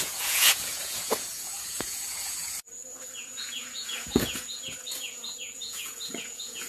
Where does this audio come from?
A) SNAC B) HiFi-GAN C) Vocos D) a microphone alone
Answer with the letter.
C